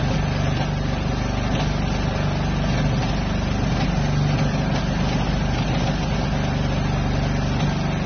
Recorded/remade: recorded